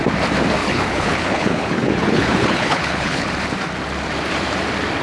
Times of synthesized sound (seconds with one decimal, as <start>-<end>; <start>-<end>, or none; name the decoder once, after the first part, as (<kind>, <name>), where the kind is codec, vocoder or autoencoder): 0.6-3.3 (codec, HILCodec)